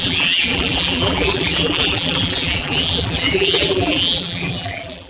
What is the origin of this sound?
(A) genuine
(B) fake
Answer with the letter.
B